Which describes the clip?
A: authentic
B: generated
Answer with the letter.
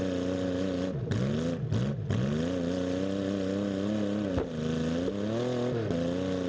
A